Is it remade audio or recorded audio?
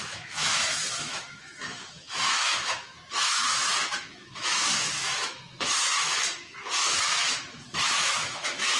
remade